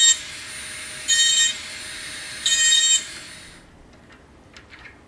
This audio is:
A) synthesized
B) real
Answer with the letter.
B